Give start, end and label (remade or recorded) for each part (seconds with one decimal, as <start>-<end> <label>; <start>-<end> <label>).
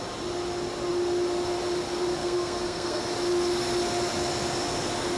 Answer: 0.0-2.2 recorded; 2.2-3.0 remade; 3.0-5.2 recorded